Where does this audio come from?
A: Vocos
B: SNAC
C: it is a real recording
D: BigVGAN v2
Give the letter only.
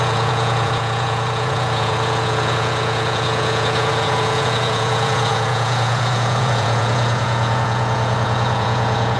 A